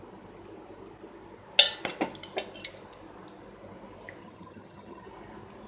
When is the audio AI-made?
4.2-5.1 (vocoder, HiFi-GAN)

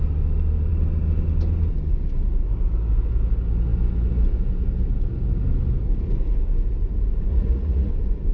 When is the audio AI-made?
7.3-7.9 (vocoder, Vocos)

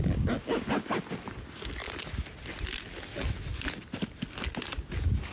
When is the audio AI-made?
none

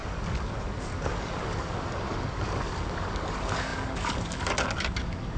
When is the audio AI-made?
0.0-5.4 (codec, DAC)